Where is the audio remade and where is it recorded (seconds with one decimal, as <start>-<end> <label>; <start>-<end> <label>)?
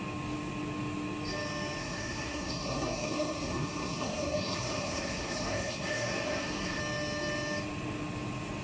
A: 0.0-1.8 recorded; 1.8-6.8 remade; 6.8-8.6 recorded